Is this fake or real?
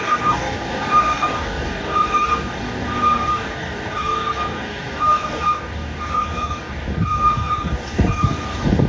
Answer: fake